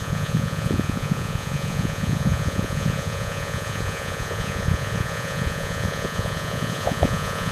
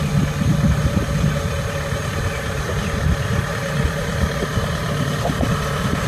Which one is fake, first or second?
first